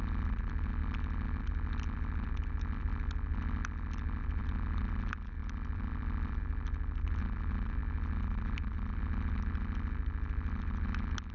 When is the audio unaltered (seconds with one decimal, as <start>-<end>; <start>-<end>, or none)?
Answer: 0.0-5.4; 6.4-11.3